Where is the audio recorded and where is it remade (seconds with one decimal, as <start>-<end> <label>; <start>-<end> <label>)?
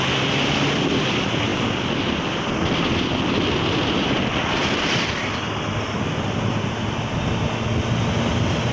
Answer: 0.0-8.7 recorded